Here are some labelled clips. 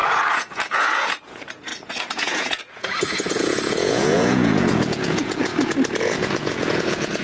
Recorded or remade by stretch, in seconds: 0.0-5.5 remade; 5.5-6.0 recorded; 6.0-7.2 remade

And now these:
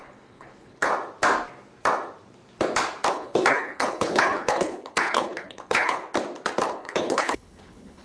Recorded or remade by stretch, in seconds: 0.0-0.9 remade; 0.9-3.1 recorded; 3.1-6.0 remade; 6.0-6.7 recorded; 6.7-8.0 remade

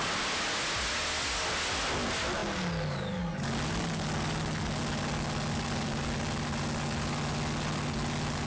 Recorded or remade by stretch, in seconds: 0.0-8.5 recorded

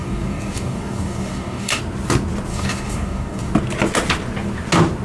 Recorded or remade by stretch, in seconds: 0.0-1.8 remade; 1.8-2.5 recorded; 2.5-3.5 remade; 3.5-5.0 recorded

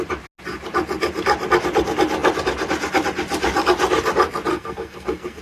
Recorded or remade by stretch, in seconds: 0.0-4.5 recorded; 4.5-5.4 remade

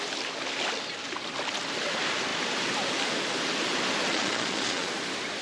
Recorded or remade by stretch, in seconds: 0.0-4.1 recorded; 4.1-4.9 remade; 4.9-5.4 recorded